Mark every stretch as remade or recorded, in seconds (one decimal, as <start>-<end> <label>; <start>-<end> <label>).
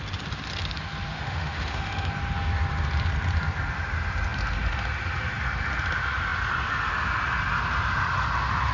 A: 0.0-1.1 recorded; 1.1-2.1 remade; 2.1-8.7 recorded